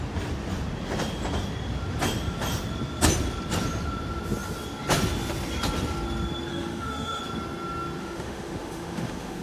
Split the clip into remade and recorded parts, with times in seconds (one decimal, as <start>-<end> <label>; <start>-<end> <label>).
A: 0.0-6.5 recorded; 6.5-7.2 remade; 7.2-8.0 recorded; 8.0-9.4 remade